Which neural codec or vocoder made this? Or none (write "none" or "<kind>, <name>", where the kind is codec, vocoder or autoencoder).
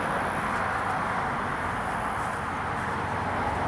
none